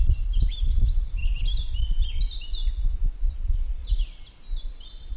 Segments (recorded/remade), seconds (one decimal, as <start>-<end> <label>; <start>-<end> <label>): 0.0-1.2 remade; 1.2-2.7 recorded; 2.7-3.8 remade; 3.8-4.7 recorded; 4.7-5.2 remade